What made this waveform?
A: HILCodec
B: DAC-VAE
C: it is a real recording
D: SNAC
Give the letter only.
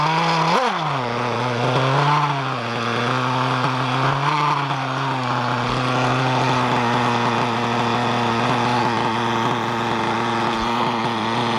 C